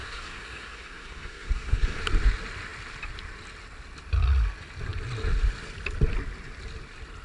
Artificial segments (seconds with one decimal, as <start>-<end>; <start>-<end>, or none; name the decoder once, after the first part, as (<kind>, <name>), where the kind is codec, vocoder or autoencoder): 0.0-2.0 (codec, SNAC)